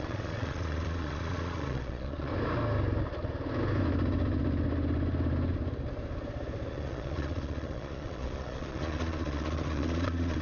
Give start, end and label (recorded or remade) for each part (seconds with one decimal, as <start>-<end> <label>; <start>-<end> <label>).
0.0-2.3 remade; 2.3-6.7 recorded; 6.7-10.4 remade